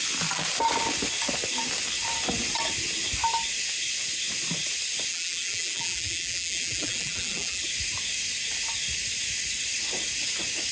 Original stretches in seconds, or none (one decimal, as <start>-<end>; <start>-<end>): 0.0-5.1; 7.6-10.7